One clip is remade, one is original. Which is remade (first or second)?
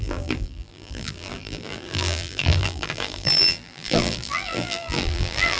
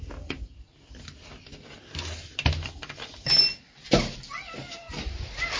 first